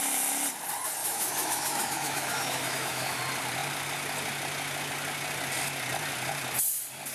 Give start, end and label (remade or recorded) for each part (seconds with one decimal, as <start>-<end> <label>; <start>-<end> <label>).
0.0-1.0 recorded; 1.0-3.2 remade; 3.2-7.1 recorded